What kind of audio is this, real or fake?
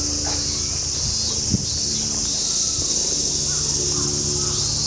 real